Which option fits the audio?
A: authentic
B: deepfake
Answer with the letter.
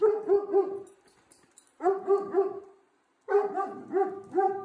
A